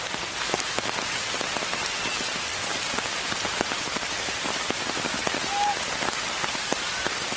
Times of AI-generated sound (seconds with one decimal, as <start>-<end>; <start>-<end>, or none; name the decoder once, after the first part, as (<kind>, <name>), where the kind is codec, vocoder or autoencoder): none